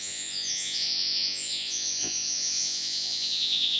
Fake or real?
fake